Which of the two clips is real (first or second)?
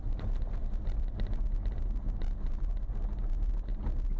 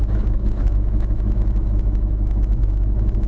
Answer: first